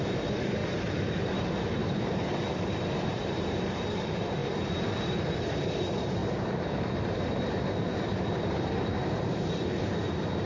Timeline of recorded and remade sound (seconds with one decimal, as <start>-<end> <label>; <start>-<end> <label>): 0.0-10.5 remade